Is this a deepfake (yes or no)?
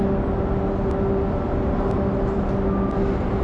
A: no